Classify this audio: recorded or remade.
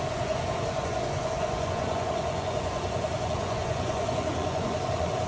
remade